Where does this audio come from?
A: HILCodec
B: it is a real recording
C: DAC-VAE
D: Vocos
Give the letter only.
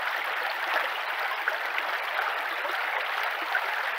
B